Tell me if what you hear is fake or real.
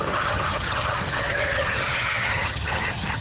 fake